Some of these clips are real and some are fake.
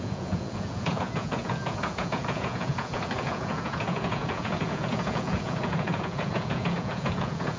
fake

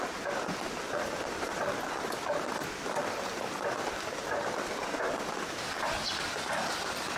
real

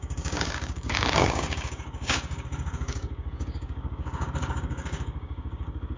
fake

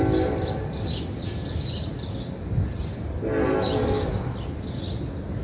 real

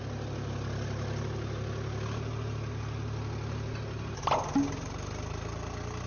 real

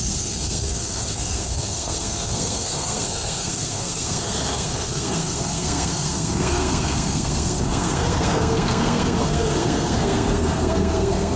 fake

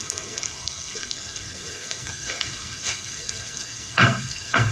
fake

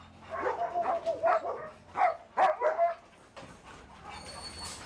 real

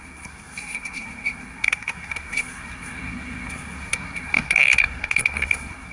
fake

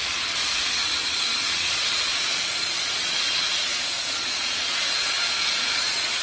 fake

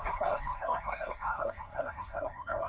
fake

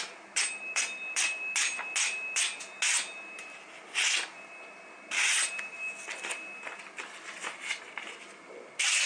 real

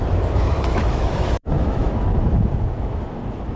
fake